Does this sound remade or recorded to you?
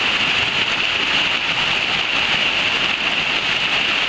recorded